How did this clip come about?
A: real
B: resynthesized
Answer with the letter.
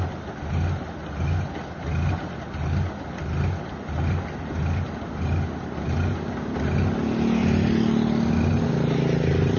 A